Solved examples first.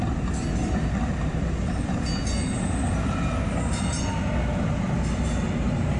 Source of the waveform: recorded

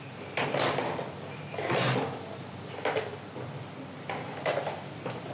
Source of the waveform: remade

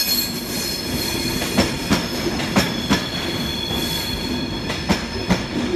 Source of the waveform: recorded